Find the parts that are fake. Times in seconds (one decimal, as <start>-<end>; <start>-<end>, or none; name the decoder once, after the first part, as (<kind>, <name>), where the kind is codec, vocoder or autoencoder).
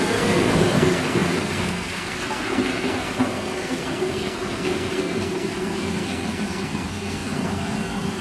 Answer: 0.0-8.2 (codec, SNAC)